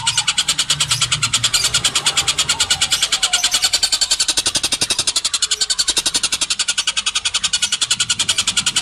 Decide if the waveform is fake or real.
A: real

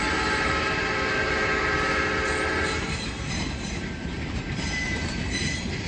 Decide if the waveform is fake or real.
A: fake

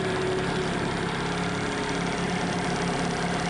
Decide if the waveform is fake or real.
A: real